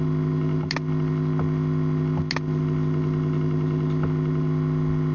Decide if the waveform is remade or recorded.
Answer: recorded